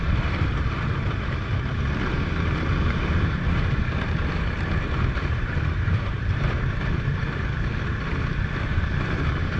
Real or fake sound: fake